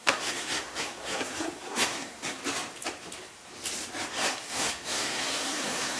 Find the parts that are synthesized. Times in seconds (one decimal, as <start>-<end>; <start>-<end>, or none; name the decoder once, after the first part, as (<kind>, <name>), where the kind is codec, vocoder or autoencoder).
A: 0.0-2.4 (codec, SNAC); 4.3-6.0